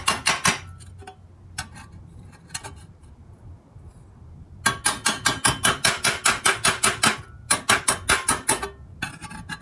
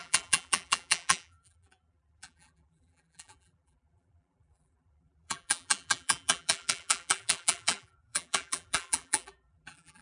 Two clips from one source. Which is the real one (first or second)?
first